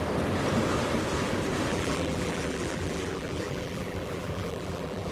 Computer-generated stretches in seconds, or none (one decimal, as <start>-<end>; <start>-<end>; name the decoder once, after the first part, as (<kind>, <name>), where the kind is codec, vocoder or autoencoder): 1.7-5.1 (vocoder, BigVGAN v2)